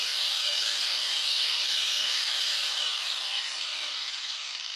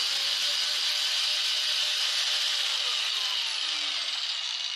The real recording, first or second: second